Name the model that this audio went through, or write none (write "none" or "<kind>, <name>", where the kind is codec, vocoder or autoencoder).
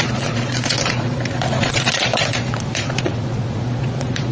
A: vocoder, Vocos